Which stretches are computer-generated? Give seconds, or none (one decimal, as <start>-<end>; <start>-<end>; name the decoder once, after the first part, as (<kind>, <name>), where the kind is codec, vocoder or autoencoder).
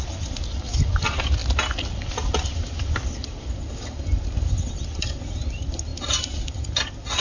none